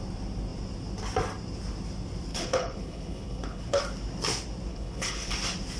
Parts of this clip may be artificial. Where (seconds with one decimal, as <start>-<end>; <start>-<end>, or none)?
2.3-3.8; 4.7-5.3